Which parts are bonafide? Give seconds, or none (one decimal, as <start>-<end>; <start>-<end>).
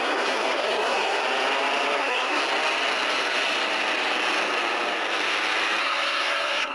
1.2-2.0; 2.4-5.8